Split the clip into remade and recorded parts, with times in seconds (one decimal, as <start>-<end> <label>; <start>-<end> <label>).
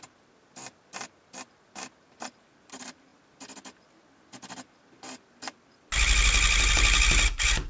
0.0-7.7 recorded